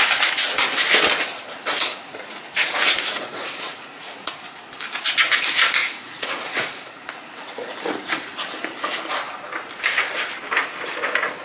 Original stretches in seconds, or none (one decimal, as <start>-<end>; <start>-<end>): 0.0-1.3; 4.3-5.8; 8.1-11.4